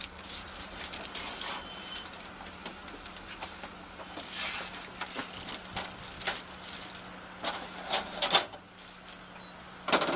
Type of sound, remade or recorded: recorded